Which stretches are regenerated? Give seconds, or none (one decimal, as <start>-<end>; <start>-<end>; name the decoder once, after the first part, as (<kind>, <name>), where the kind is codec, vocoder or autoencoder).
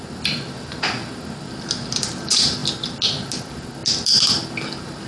none